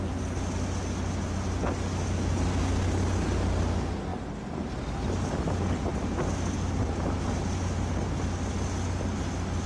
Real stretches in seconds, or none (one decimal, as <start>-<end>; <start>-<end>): 0.0-9.7